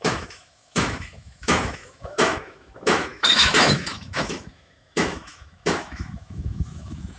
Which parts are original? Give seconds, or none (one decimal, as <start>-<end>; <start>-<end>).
none